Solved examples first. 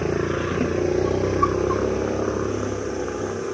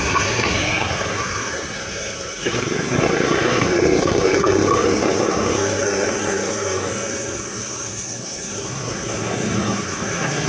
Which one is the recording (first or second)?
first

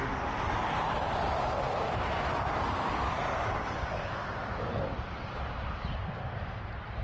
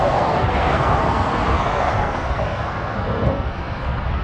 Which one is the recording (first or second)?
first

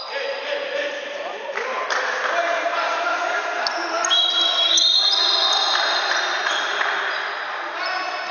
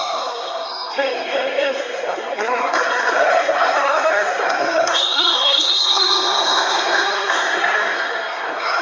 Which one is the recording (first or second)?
first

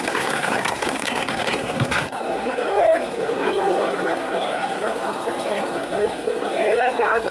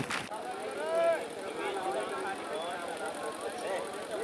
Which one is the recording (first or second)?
second